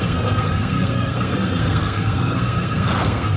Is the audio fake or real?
fake